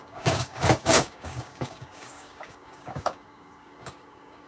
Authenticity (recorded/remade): remade